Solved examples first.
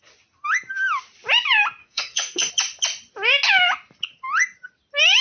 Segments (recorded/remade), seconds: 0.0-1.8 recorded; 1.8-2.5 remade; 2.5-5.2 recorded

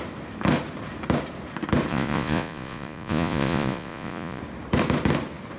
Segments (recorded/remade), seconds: 0.0-1.9 recorded; 1.9-4.4 remade; 4.4-5.6 recorded

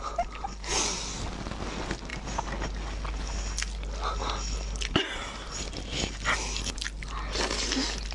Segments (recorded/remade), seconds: 0.0-8.1 recorded

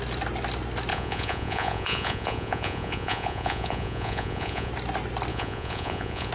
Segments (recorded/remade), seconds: 0.0-0.9 recorded; 0.9-4.7 remade; 4.7-5.3 recorded; 5.3-6.3 remade